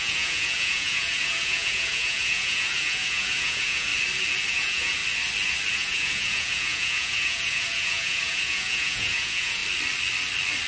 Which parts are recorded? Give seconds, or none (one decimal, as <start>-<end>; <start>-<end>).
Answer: 3.9-4.5; 5.0-5.7; 9.6-10.7